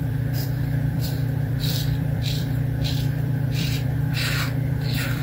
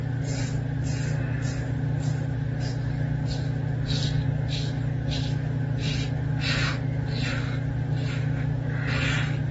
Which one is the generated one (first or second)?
first